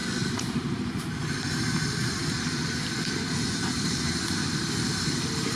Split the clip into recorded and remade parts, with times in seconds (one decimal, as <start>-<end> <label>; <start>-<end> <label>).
0.0-5.6 remade